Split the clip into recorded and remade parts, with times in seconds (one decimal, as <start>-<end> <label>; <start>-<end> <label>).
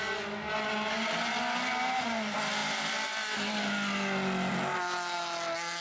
0.0-5.8 recorded